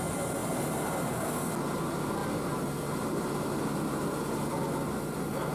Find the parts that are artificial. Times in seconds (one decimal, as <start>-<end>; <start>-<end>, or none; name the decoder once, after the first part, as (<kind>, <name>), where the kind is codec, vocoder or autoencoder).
none